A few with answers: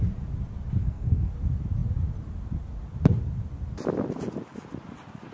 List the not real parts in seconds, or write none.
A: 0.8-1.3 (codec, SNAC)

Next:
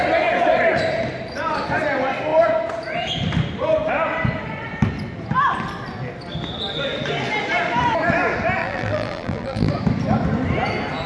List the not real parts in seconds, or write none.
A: 8.6-9.7 (vocoder, BigVGAN v2)

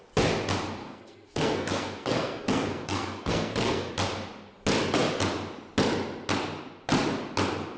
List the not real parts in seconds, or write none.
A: 0.8-3.9 (codec, SNAC)